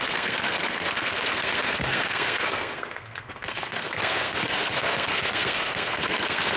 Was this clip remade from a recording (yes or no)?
yes